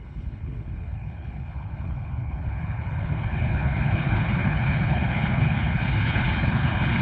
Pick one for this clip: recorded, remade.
remade